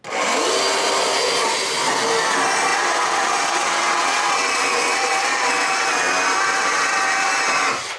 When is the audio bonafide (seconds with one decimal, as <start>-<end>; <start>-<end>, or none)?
0.0-2.7; 6.1-6.5; 7.3-8.0